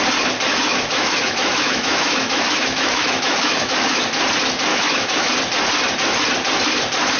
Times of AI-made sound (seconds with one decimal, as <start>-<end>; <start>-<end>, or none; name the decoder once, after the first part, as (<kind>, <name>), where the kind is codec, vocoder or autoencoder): 0.5-4.0 (autoencoder, DAC-VAE); 4.7-5.3